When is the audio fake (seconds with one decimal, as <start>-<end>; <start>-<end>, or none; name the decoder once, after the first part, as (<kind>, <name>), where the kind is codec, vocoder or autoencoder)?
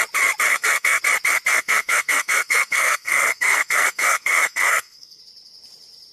0.5-1.0 (codec, SNAC); 1.5-5.2